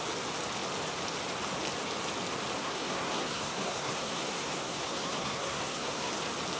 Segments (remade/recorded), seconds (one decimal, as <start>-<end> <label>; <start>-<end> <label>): 0.0-2.6 recorded; 2.6-6.1 remade; 6.1-6.6 recorded